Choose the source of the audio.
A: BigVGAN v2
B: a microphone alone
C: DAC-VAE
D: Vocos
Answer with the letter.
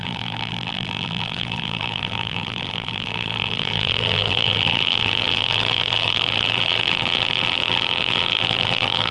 A